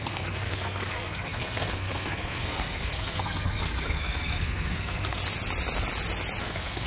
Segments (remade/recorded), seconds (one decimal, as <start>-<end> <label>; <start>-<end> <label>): 0.0-5.2 remade; 5.2-6.4 recorded; 6.4-6.9 remade

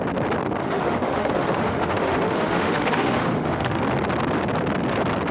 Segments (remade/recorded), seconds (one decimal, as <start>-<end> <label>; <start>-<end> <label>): 0.0-0.6 recorded; 0.6-3.8 remade; 3.8-5.3 recorded

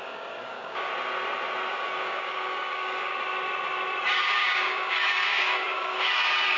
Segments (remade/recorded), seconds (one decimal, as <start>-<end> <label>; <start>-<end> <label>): 0.0-0.9 remade; 0.9-1.7 recorded; 1.7-3.1 remade; 3.1-4.0 recorded; 4.0-6.6 remade

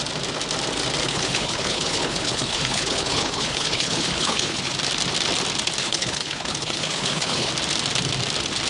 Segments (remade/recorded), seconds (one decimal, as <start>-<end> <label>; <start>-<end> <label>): 0.0-1.0 recorded; 1.0-4.7 remade; 4.7-5.8 recorded; 5.8-7.5 remade; 7.5-8.7 recorded

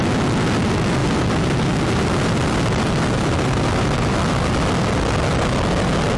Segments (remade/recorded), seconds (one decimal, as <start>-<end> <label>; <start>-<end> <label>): 0.0-1.0 recorded; 1.0-4.7 remade; 4.7-6.2 recorded

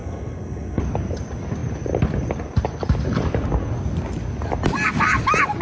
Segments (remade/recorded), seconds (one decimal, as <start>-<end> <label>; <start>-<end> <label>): 0.0-0.8 remade; 0.8-5.6 recorded